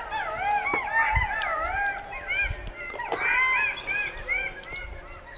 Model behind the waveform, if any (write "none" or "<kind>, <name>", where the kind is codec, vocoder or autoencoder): none